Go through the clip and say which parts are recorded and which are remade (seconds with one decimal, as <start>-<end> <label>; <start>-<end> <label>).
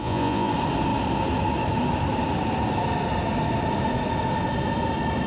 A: 0.0-0.5 remade; 0.5-5.3 recorded